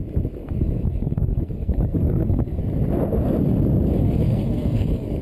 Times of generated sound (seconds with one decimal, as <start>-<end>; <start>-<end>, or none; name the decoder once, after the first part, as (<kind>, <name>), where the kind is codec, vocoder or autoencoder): 0.4-2.6 (codec, SNAC); 4.0-5.2